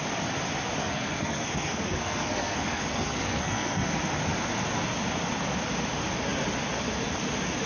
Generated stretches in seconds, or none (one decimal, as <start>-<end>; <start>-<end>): 0.8-4.0